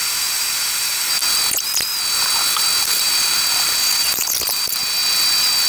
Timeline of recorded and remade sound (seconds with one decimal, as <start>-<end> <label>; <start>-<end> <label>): 0.0-1.2 remade; 1.2-2.8 recorded; 2.8-4.8 remade; 4.8-5.7 recorded